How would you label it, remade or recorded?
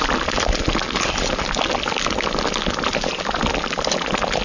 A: recorded